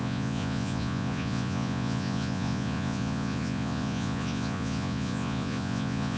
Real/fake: fake